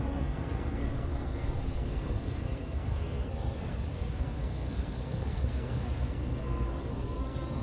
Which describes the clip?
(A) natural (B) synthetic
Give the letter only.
B